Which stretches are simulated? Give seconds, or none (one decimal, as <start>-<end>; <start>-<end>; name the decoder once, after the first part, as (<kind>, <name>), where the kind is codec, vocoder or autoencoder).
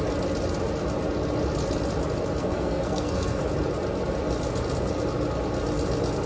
2.4-3.4 (codec, SNAC)